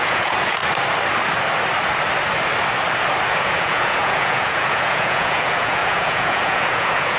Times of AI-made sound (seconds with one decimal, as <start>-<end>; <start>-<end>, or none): 0.0-0.6; 3.3-7.2